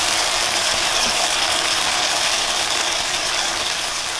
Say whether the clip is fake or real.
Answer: fake